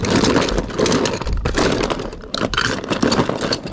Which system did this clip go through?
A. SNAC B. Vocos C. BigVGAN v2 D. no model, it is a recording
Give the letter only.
D